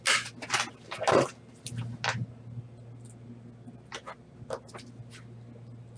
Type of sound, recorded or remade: recorded